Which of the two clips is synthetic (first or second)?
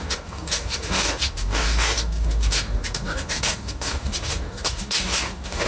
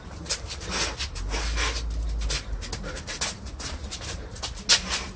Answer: first